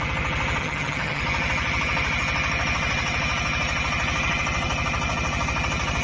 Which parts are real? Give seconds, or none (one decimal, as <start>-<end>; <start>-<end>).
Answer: 0.0-0.6; 1.2-6.0